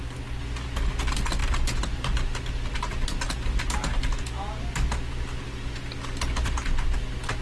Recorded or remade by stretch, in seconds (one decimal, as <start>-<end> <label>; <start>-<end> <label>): 0.0-7.4 recorded